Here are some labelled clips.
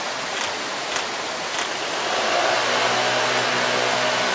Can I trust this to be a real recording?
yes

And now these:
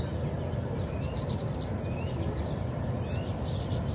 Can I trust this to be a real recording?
yes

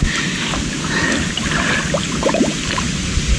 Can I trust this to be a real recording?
yes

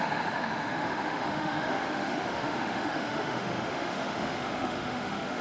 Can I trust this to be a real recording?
no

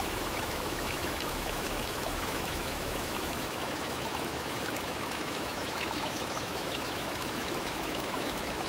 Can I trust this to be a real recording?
no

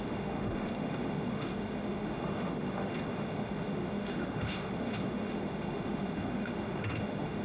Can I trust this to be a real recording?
no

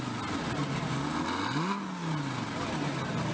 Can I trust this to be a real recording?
yes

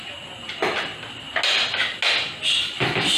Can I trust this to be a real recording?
yes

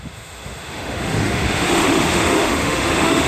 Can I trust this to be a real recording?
no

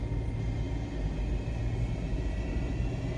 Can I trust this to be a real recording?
yes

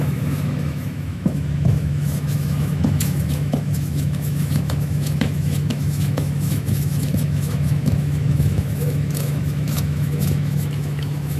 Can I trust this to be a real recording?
no